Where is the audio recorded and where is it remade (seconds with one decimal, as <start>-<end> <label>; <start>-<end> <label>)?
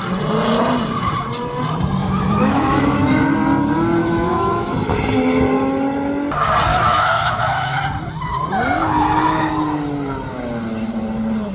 0.0-2.0 recorded; 2.0-3.2 remade; 3.2-4.0 recorded; 4.0-4.7 remade; 4.7-6.7 recorded; 6.7-7.8 remade; 7.8-11.5 recorded